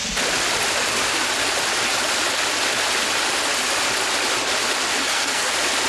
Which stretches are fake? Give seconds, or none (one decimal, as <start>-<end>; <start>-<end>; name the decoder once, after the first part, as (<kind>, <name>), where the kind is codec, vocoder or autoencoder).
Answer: 5.0-5.5 (codec, SNAC)